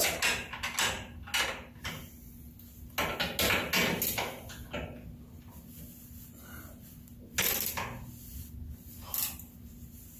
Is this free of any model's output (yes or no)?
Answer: yes